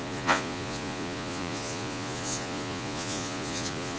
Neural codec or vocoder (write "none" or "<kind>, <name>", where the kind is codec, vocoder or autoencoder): vocoder, Vocos